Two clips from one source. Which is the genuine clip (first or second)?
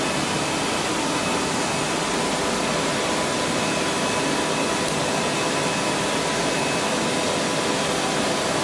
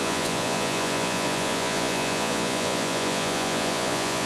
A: first